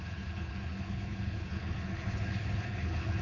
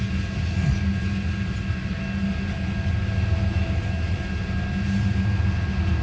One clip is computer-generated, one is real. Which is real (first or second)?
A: second